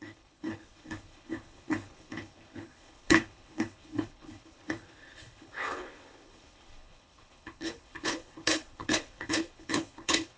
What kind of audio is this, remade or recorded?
remade